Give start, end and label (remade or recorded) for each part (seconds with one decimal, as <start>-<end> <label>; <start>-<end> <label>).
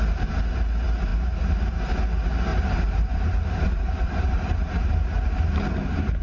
0.0-1.1 recorded; 1.1-1.8 remade; 1.8-2.5 recorded; 2.5-6.2 remade